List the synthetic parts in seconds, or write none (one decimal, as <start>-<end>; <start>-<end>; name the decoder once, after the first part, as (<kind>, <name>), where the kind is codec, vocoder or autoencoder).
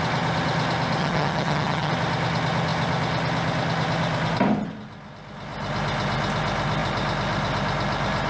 1.0-1.9 (vocoder, HiFi-GAN)